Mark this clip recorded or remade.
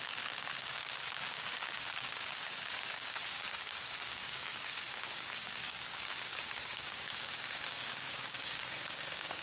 remade